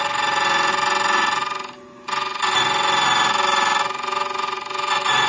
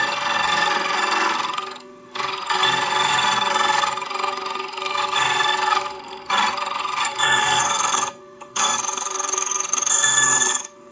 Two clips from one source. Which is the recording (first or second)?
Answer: first